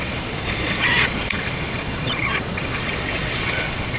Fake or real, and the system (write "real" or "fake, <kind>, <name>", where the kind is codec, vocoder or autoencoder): fake, vocoder, Vocos